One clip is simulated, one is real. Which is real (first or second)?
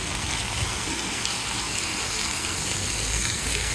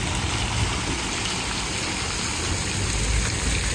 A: second